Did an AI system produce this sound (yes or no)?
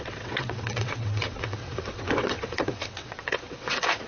yes